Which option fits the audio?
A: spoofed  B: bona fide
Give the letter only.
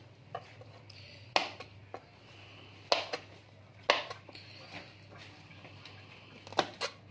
B